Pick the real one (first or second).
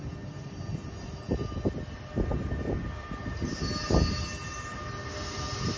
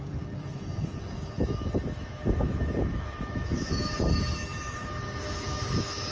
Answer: first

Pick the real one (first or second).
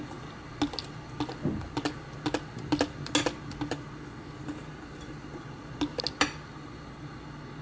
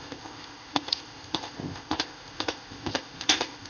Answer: first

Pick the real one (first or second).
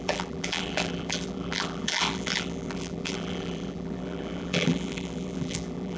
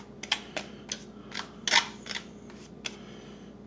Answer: second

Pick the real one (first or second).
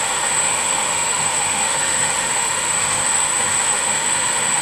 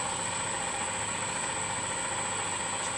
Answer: second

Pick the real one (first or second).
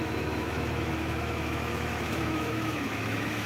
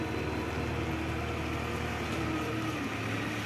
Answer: second